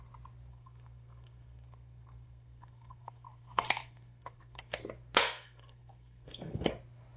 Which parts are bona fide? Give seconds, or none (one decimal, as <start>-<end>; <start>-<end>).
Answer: 0.0-0.5; 4.8-5.2; 6.7-7.2